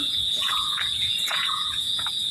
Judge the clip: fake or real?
fake